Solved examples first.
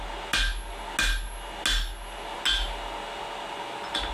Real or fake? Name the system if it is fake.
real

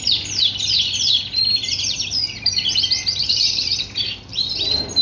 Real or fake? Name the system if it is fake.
fake, vocoder, BigVGAN v2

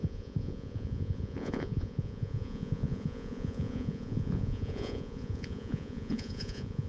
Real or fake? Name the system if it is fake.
fake, vocoder, Vocos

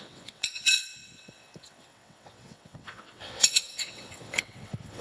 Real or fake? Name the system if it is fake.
fake, vocoder, WaveNeXt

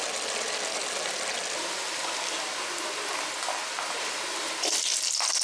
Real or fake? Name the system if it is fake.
real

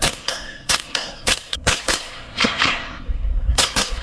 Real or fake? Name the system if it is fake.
fake, codec, SNAC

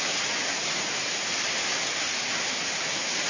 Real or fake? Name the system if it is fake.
real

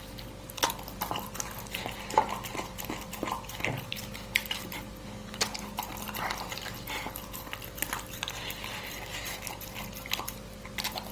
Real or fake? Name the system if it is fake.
real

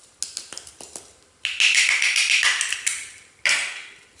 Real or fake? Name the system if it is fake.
real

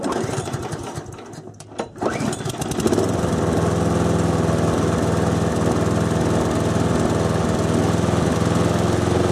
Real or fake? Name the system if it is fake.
real